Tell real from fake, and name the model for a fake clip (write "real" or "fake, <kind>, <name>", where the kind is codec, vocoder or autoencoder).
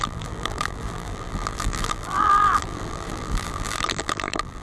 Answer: fake, vocoder, BigVGAN v2